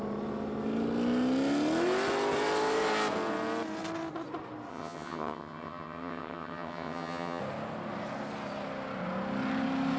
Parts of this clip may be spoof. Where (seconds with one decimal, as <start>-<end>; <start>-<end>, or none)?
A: 4.7-7.4